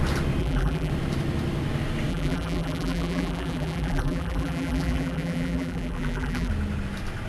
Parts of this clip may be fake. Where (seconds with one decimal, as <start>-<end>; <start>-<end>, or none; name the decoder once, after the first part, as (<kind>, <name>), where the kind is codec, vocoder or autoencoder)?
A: 0.4-0.9 (vocoder, BigVGAN v2); 2.1-6.5